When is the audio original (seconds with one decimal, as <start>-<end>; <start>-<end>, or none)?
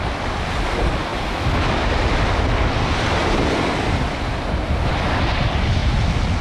0.0-6.4